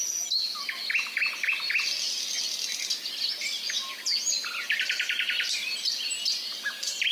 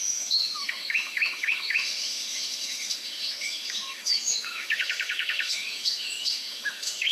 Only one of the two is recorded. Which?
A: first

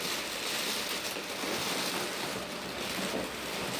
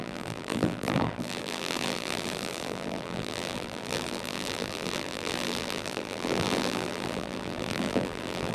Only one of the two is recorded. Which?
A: first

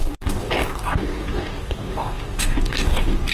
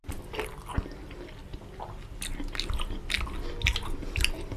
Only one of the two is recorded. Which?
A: second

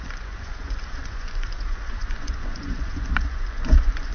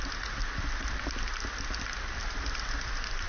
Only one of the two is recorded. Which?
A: second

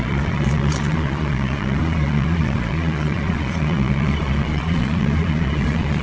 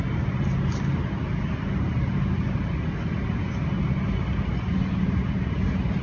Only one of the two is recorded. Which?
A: second